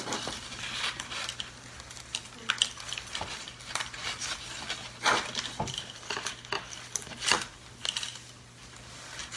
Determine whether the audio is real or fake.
real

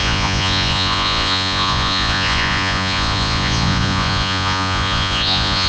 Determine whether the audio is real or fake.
fake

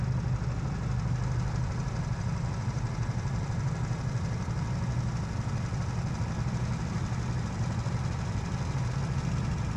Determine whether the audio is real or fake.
real